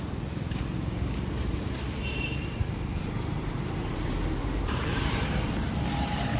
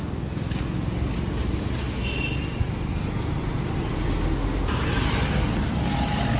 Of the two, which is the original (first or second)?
second